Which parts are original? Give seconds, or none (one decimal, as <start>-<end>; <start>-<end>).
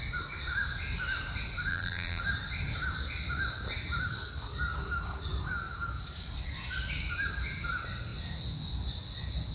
0.0-1.7; 2.2-9.5